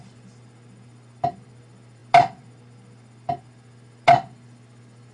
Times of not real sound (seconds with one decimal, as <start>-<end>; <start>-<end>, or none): none